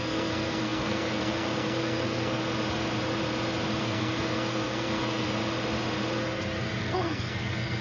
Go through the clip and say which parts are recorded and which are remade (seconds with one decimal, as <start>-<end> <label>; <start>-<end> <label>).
0.0-2.4 remade; 2.4-3.8 recorded; 3.8-5.4 remade; 5.4-6.8 recorded; 6.8-7.8 remade